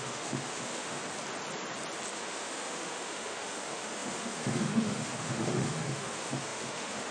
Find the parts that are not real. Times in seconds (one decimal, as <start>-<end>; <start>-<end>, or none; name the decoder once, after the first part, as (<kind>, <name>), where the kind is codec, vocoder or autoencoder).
0.0-1.0 (autoencoder, DAC-VAE); 2.1-7.1